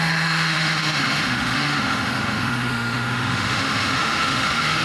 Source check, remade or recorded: remade